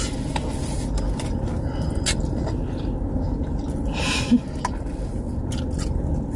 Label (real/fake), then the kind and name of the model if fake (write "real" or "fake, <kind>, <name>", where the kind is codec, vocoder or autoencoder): real